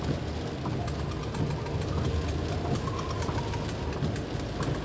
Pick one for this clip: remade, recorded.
recorded